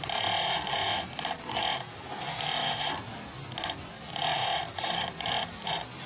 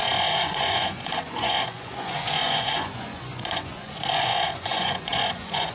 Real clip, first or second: first